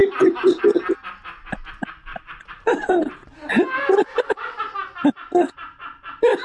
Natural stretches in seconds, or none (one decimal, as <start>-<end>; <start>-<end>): 0.9-2.1; 4.6-6.4